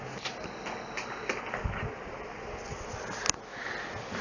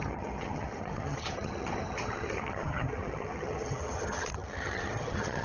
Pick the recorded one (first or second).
first